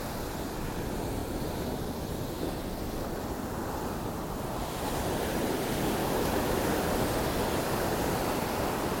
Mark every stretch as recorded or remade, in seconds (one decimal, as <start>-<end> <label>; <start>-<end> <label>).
0.0-6.0 recorded; 6.0-6.6 remade; 6.6-9.0 recorded